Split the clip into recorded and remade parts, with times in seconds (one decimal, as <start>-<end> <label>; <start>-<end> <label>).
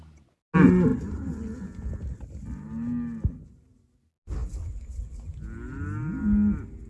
0.0-6.9 recorded